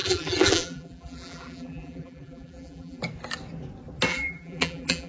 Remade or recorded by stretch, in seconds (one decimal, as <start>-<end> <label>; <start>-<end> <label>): 0.0-3.0 remade; 3.0-4.1 recorded; 4.1-5.1 remade

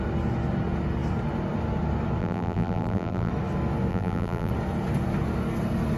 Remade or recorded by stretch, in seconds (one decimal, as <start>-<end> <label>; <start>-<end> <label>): 0.0-2.2 recorded; 2.2-3.3 remade; 3.3-3.9 recorded; 3.9-4.5 remade; 4.5-6.0 recorded